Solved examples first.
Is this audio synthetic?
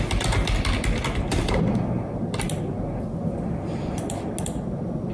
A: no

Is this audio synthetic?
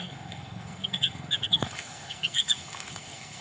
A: yes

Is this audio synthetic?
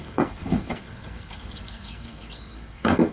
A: yes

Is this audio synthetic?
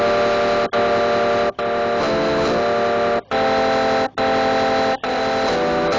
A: no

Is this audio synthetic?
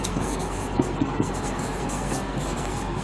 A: yes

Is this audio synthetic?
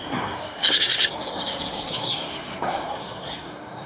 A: yes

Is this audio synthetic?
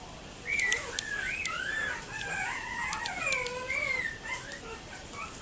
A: no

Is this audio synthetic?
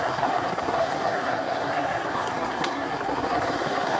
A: yes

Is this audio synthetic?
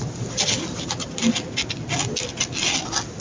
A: no